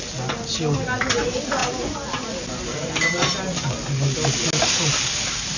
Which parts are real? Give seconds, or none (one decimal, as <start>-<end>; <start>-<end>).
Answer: 0.0-5.6